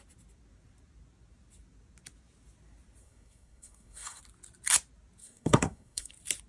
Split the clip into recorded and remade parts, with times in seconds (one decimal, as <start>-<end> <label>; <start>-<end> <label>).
0.0-3.0 recorded; 3.0-4.2 remade; 4.2-5.2 recorded; 5.2-6.1 remade; 6.1-6.5 recorded